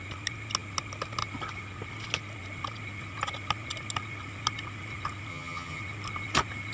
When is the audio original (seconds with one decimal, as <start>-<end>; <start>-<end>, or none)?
0.0-5.3; 5.8-6.7